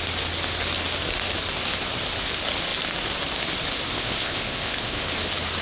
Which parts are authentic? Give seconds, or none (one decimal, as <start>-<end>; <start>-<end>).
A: 0.0-3.9; 5.1-5.6